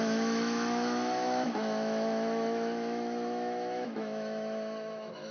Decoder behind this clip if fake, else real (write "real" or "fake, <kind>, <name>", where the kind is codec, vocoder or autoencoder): fake, autoencoder, DAC-VAE